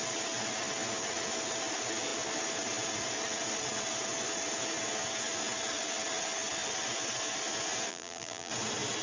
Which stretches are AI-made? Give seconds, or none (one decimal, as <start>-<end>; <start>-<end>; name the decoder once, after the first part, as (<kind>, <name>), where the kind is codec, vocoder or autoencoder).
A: 7.9-8.5 (vocoder, BigVGAN v2)